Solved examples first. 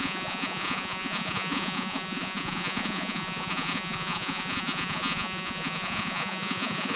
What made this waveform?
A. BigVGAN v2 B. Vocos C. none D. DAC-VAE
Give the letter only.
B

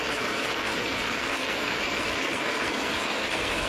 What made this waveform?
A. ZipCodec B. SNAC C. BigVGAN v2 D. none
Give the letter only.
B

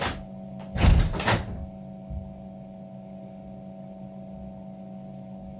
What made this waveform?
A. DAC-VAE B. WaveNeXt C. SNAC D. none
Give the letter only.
D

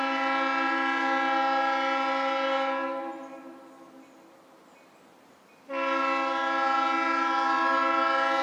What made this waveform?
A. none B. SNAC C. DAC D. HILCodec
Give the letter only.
A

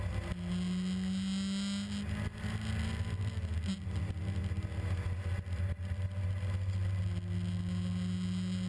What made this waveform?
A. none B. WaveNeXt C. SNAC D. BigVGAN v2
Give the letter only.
A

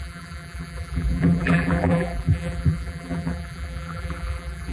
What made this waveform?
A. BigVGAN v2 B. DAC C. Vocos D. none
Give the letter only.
A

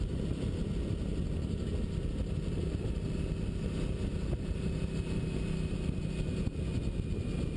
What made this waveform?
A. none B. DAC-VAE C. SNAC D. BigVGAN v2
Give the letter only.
A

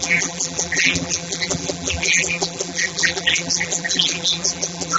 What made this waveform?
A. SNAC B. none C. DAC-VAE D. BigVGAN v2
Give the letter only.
D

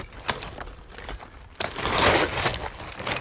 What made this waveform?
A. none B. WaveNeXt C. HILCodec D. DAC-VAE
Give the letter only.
A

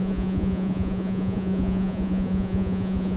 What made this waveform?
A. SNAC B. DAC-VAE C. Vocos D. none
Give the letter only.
C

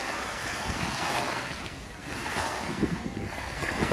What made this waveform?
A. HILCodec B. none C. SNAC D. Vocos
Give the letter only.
C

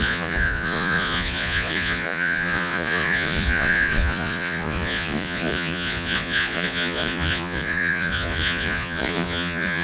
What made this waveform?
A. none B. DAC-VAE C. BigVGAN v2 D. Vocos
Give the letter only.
D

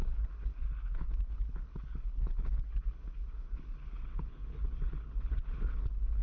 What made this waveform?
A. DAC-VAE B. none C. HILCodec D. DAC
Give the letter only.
C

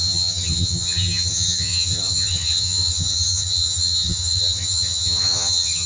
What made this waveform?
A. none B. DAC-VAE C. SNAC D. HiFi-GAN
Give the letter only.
D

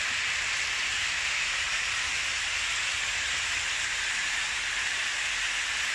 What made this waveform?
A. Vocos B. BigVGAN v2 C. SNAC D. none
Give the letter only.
D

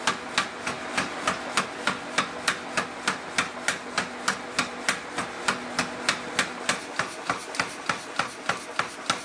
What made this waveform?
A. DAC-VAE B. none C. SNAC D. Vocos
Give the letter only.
B